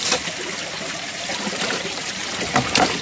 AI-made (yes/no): no